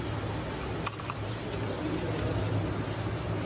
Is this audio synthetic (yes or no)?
no